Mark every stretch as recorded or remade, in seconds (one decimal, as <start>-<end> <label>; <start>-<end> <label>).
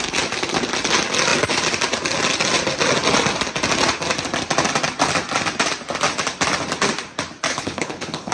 0.0-7.5 recorded; 7.5-8.3 remade